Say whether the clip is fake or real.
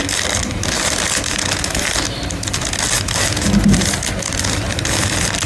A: real